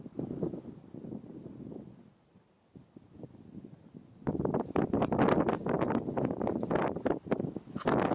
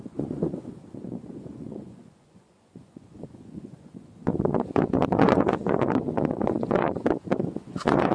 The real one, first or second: first